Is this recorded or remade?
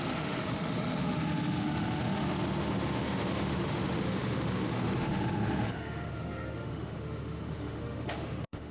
remade